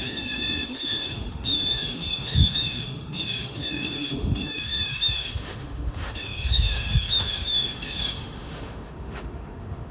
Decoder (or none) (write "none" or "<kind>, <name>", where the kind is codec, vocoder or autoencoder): autoencoder, DAC-VAE